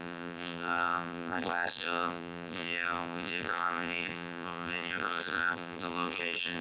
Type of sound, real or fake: fake